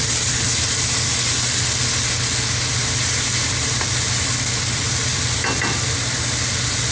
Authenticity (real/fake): real